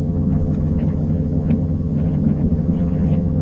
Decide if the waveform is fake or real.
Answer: fake